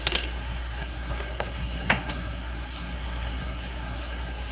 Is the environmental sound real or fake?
fake